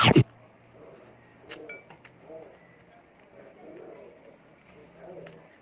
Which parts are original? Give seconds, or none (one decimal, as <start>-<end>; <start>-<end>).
0.0-5.6